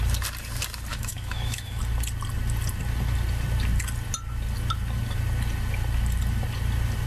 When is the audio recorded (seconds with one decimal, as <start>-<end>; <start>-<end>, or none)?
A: 0.0-0.9; 1.8-7.1